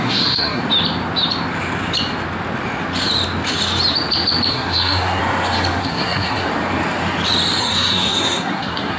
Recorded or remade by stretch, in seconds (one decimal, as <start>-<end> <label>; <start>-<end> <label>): 0.0-0.6 remade; 0.6-4.5 recorded; 4.5-5.2 remade; 5.2-5.8 recorded; 5.8-6.5 remade; 6.5-7.6 recorded; 7.6-9.0 remade